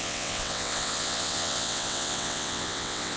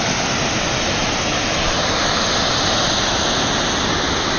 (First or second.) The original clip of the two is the second